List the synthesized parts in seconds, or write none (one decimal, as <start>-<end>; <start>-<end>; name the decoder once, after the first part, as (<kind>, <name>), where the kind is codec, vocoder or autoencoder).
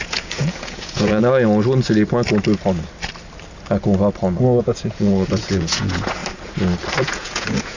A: 0.0-1.2 (vocoder, Vocos); 4.6-6.2; 7.0-7.8